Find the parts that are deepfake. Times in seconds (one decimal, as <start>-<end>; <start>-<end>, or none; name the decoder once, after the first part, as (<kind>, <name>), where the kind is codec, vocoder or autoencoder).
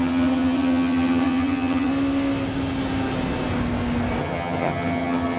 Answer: 0.0-1.9 (vocoder, HiFi-GAN); 4.2-5.4